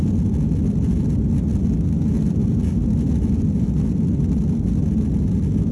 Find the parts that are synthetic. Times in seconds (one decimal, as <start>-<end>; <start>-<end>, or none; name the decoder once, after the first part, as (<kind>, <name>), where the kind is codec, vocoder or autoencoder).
none